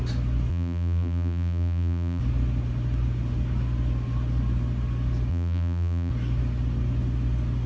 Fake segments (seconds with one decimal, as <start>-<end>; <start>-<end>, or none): 0.5-2.2; 5.3-6.1